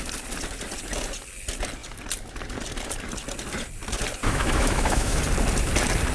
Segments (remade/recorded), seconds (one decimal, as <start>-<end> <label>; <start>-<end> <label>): 0.0-4.2 recorded; 4.2-5.2 remade; 5.2-6.1 recorded